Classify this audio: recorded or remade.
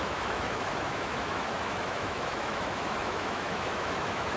remade